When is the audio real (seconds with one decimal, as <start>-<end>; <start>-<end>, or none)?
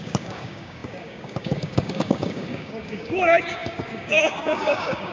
none